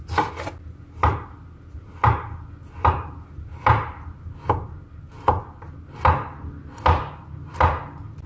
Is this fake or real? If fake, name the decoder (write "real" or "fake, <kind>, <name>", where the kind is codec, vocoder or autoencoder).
real